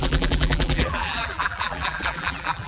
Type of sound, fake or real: fake